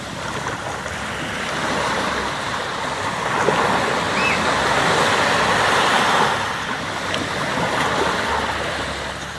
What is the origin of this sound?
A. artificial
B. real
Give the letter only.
B